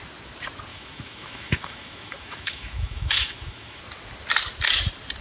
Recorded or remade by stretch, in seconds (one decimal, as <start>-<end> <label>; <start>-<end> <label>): 0.0-0.7 recorded; 0.7-3.8 remade; 3.8-5.2 recorded